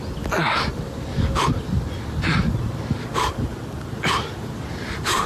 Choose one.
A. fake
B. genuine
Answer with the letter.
B